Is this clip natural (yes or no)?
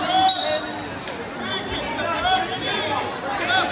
yes